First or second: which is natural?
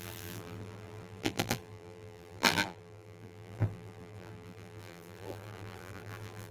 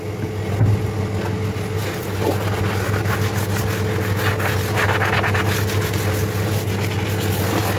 second